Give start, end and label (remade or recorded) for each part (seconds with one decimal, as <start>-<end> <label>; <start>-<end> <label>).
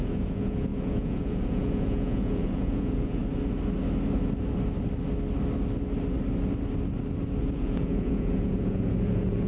0.0-3.2 remade; 3.2-7.4 recorded; 7.4-9.5 remade